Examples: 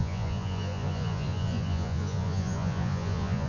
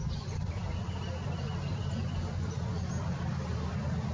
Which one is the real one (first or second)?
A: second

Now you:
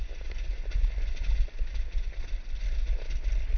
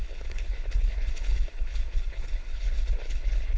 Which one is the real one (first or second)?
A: first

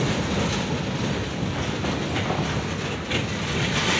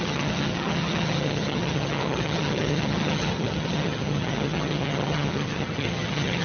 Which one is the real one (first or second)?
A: first